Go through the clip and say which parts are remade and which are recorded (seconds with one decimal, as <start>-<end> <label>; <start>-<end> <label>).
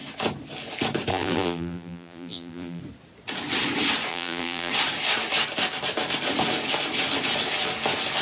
0.0-1.1 recorded; 1.1-2.8 remade; 2.8-4.1 recorded; 4.1-4.7 remade; 4.7-8.2 recorded